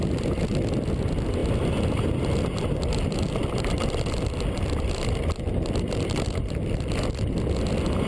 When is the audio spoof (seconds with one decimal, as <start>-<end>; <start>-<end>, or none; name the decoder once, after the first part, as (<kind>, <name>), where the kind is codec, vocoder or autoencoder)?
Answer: none